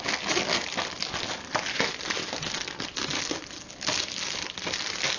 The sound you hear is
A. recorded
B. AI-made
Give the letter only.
A